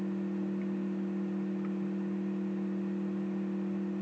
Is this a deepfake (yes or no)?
no